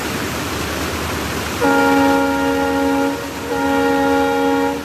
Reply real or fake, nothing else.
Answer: real